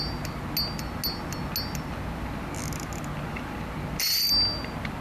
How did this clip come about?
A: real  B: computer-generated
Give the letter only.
A